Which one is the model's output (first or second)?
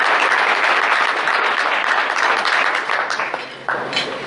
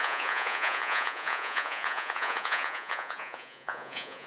second